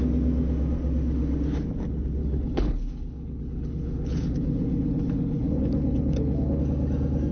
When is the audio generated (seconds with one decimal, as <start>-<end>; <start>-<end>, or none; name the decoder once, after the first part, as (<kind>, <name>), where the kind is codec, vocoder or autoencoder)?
2.2-6.6 (codec, HILCodec)